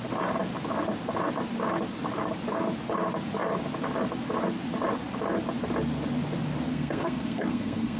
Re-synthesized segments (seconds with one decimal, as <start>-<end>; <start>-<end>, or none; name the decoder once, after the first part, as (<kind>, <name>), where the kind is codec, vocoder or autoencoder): 6.7-8.0 (codec, SNAC)